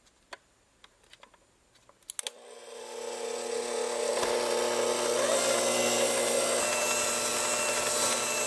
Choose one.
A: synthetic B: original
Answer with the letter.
B